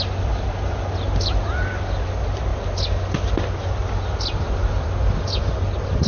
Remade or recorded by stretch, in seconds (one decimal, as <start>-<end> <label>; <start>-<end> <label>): 0.0-6.1 recorded